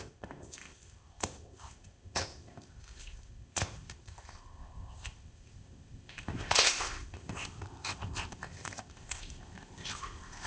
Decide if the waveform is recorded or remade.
remade